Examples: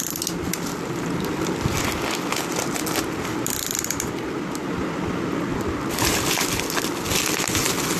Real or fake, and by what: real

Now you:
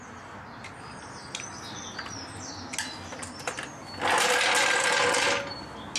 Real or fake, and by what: real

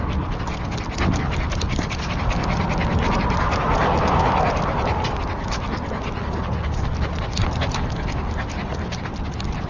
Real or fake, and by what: real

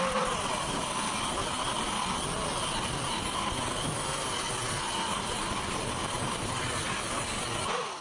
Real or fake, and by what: real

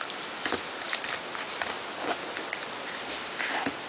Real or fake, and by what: real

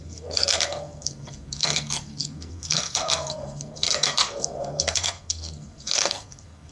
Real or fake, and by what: fake, codec, SNAC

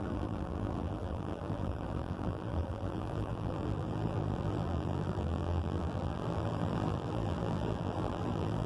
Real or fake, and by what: fake, vocoder, BigVGAN v2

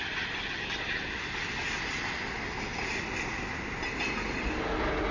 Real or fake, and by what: real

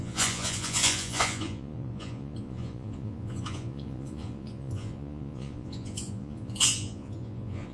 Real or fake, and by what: fake, vocoder, Vocos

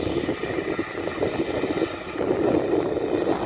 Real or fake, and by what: real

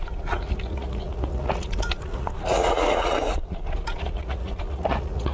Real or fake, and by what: fake, vocoder, Vocos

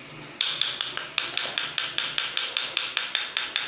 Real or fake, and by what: real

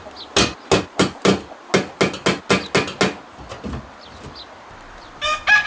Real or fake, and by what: real